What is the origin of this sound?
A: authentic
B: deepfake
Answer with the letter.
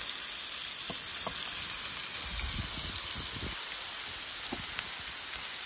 A